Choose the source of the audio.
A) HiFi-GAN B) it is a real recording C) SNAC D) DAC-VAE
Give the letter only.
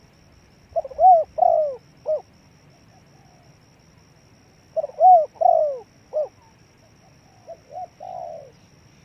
B